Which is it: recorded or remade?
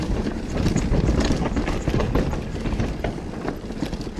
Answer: remade